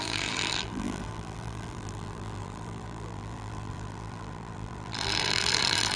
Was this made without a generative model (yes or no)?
no